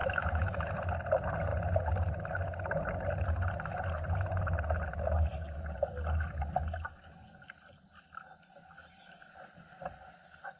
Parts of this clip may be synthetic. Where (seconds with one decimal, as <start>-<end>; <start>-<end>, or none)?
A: 0.0-0.7